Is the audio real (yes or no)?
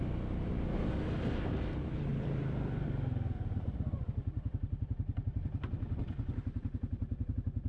no